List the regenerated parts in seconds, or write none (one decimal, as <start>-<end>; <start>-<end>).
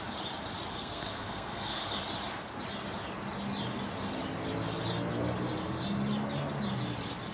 0.8-2.0